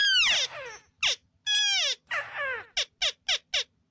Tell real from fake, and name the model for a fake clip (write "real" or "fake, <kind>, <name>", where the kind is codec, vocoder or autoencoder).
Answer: real